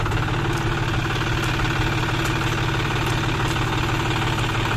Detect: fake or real real